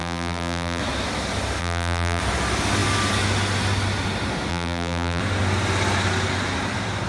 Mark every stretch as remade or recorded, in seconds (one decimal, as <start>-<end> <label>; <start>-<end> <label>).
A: 0.0-0.8 remade; 0.8-1.6 recorded; 1.6-2.2 remade; 2.2-4.5 recorded; 4.5-5.2 remade; 5.2-7.1 recorded